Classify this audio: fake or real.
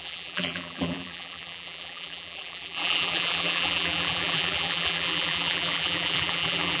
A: fake